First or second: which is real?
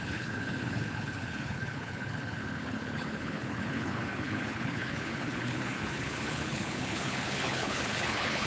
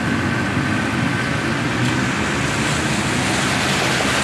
second